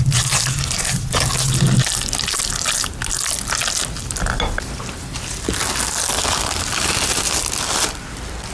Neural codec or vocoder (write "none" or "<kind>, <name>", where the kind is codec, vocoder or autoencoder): none